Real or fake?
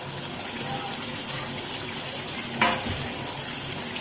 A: real